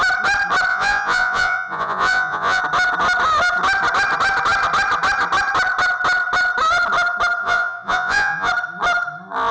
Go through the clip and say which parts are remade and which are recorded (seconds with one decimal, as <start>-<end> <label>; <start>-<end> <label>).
0.0-0.7 recorded; 0.7-2.6 remade; 2.6-7.4 recorded; 7.4-8.5 remade; 8.5-9.5 recorded